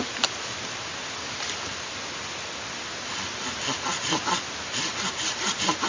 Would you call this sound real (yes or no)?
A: yes